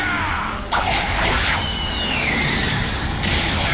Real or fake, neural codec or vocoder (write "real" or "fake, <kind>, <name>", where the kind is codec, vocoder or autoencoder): fake, codec, DAC